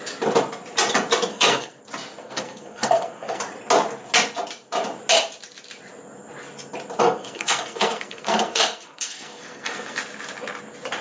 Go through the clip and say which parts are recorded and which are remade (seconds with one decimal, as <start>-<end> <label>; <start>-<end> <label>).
0.0-1.3 recorded; 1.3-1.8 remade; 1.8-2.2 recorded; 2.2-3.4 remade; 3.4-7.0 recorded; 7.0-10.0 remade; 10.0-11.0 recorded